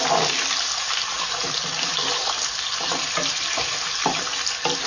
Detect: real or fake fake